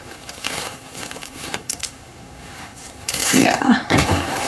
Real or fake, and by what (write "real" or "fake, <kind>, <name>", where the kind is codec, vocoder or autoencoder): fake, codec, SNAC